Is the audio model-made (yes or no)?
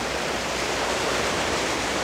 yes